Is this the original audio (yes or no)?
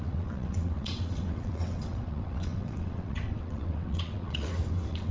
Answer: no